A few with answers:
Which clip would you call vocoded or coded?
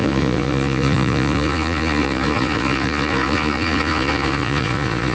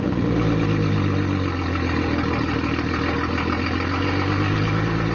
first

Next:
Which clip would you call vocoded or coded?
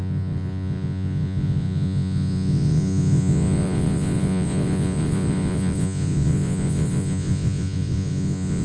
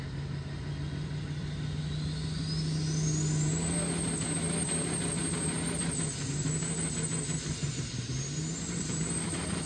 first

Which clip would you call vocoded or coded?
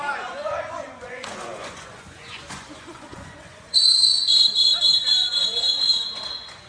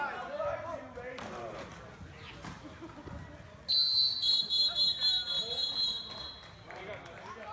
first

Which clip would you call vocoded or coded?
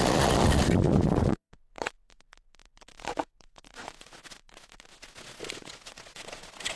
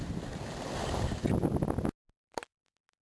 first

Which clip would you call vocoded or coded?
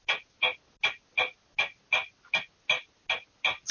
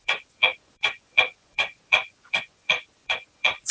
second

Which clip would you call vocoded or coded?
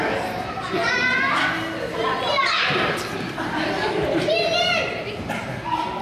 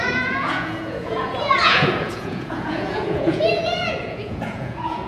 second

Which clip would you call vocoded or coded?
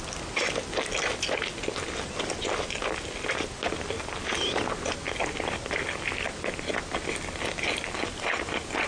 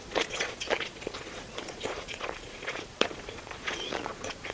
second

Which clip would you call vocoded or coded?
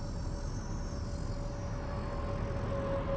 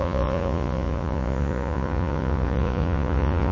second